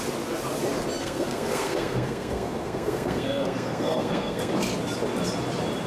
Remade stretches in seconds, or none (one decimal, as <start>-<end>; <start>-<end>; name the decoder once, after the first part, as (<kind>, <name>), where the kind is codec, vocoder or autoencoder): 1.0-4.5 (codec, SNAC)